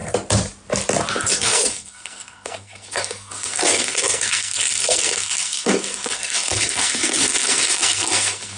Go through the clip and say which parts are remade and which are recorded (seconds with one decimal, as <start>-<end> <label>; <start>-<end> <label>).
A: 0.0-1.3 recorded; 1.3-8.6 remade